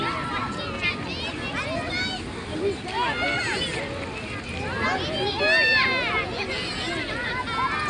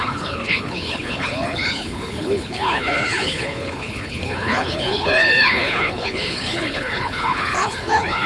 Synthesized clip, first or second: second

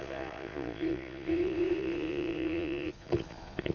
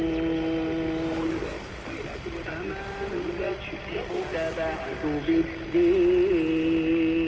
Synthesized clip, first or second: first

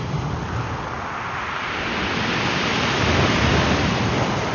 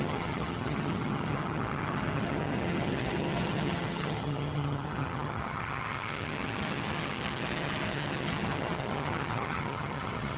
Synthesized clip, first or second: second